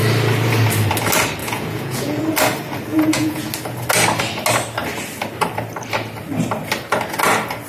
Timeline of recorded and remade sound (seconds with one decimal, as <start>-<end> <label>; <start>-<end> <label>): 0.0-1.4 recorded; 1.4-2.2 remade; 2.2-2.9 recorded; 2.9-3.5 remade; 3.5-7.7 recorded